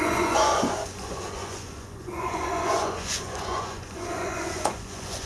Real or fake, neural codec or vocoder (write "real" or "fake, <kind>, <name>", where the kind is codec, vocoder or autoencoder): fake, vocoder, Vocos